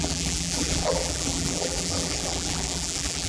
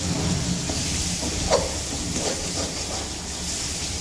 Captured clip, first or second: second